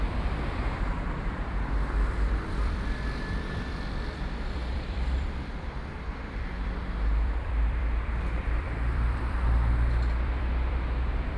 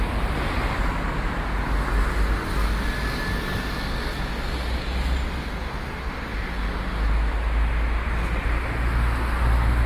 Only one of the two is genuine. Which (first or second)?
second